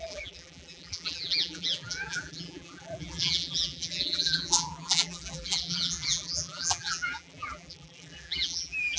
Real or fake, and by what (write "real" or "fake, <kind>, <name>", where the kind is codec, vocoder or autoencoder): fake, vocoder, BigVGAN v2